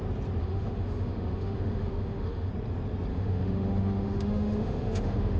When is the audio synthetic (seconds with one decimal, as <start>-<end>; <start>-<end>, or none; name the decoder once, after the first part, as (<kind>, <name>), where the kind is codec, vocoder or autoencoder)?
0.4-2.5 (autoencoder, DAC-VAE); 3.1-5.4